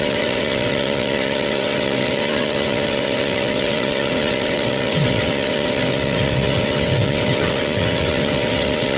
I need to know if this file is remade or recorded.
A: remade